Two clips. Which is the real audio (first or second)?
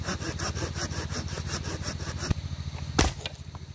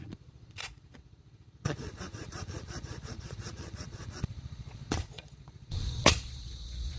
first